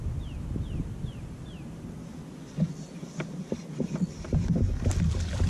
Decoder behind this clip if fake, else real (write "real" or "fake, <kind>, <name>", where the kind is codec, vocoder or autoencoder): real